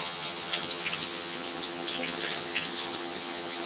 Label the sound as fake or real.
fake